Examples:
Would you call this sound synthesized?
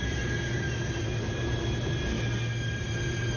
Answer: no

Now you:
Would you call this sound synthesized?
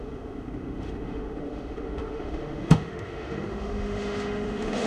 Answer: yes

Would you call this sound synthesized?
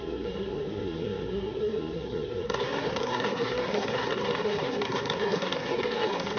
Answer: yes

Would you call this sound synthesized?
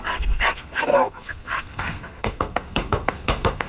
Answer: yes